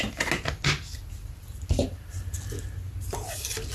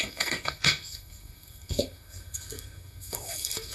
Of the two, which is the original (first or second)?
first